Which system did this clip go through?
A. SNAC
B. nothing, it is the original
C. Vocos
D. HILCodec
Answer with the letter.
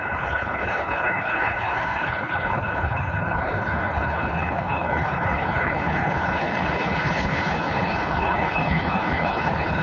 D